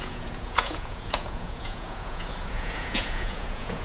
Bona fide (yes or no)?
no